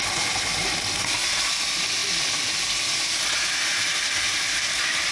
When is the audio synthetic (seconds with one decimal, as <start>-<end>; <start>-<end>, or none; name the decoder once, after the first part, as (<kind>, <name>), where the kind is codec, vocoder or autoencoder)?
none